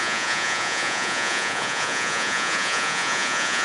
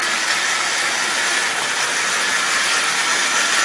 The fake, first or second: first